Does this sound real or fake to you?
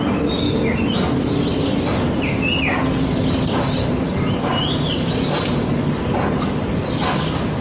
real